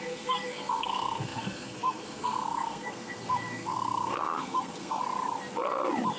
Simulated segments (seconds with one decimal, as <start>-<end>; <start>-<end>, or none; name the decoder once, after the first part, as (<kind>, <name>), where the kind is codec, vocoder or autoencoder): 0.0-5.0 (codec, SNAC)